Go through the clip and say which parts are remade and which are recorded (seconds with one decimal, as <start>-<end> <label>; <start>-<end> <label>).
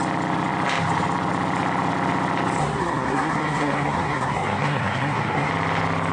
0.0-2.6 recorded; 2.6-5.5 remade; 5.5-6.1 recorded